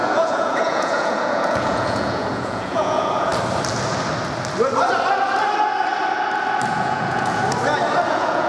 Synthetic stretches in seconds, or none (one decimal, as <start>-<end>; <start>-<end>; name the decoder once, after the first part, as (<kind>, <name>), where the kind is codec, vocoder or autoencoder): 0.0-3.3 (vocoder, Vocos); 6.7-7.4; 8.1-8.5